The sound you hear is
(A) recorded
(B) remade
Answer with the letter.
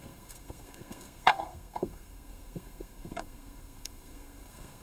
B